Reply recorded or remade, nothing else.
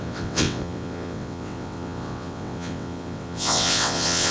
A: remade